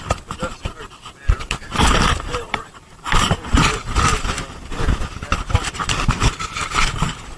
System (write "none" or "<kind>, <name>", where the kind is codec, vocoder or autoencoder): vocoder, BigVGAN v2